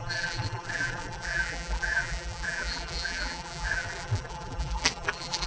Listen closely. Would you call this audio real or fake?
fake